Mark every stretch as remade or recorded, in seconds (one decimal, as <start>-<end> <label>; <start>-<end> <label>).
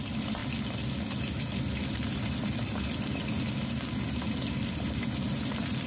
0.0-5.9 recorded